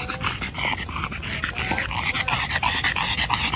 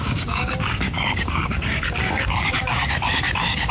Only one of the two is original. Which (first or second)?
first